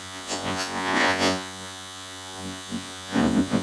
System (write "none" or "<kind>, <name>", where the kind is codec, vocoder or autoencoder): vocoder, Vocos